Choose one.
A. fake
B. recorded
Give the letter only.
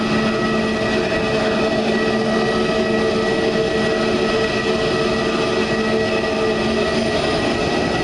B